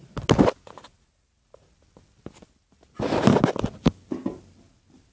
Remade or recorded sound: recorded